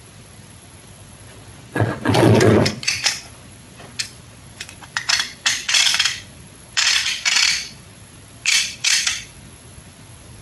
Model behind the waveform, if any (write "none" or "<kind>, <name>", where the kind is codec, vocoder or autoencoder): vocoder, Vocos